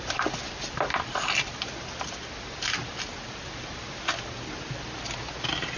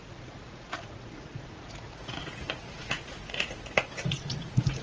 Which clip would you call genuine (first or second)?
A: first